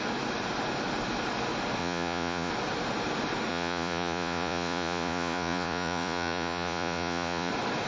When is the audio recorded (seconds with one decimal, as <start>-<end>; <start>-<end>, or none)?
0.0-1.8; 2.5-3.5; 7.5-7.9